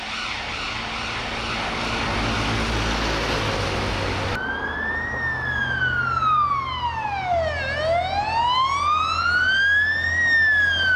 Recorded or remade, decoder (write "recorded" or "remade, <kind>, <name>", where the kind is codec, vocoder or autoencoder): recorded